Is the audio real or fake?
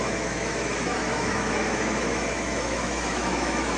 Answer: fake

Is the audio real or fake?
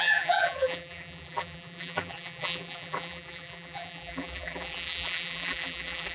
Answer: fake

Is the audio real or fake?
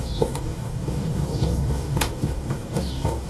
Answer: fake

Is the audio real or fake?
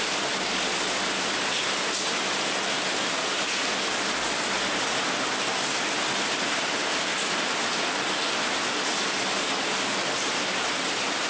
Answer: real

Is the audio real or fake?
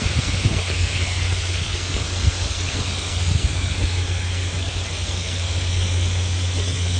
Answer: fake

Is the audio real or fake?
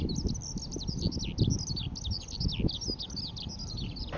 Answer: real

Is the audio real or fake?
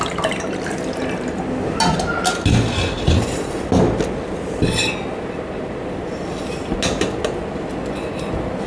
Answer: real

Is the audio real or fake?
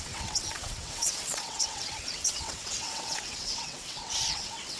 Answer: fake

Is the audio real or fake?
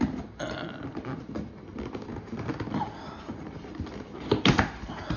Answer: real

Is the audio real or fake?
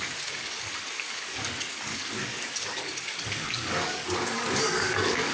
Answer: fake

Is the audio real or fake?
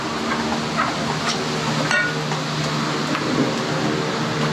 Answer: real